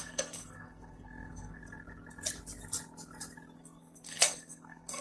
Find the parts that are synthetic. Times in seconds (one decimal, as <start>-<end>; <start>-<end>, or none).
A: 0.0-1.6; 3.6-5.0